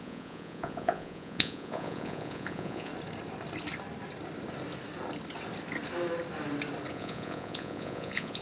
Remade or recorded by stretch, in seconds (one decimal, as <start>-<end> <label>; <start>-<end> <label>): 0.0-2.9 remade; 2.9-6.9 recorded; 6.9-8.4 remade